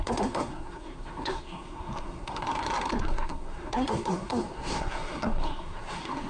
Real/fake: fake